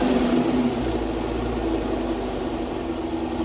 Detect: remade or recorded recorded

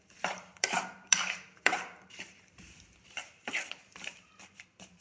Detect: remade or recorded remade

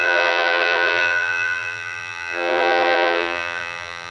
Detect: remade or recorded remade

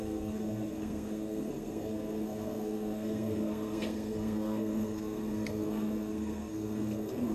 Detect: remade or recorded remade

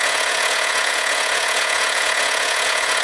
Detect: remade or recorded remade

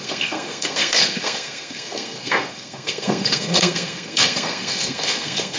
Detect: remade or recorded remade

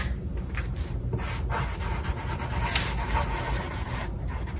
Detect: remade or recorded remade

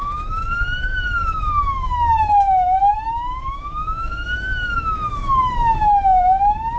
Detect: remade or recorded remade